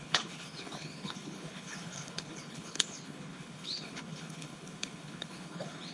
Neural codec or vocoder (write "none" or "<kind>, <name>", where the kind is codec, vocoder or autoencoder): codec, HILCodec